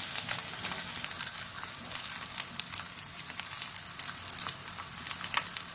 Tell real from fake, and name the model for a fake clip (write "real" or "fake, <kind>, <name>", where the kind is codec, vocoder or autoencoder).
real